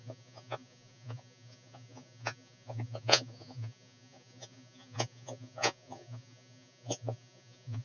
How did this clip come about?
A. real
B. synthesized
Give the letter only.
B